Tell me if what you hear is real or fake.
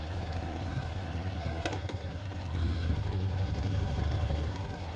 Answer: fake